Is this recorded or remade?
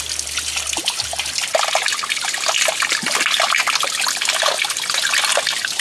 recorded